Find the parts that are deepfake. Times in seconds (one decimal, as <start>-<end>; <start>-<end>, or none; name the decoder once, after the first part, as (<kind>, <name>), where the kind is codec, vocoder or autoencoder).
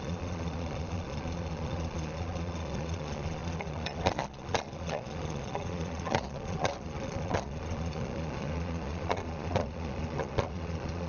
0.0-11.1 (vocoder, Vocos)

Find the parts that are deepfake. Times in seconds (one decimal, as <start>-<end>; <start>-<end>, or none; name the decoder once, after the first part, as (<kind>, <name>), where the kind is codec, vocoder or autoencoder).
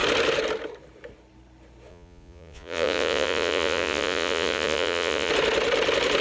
1.9-5.3 (vocoder, Vocos)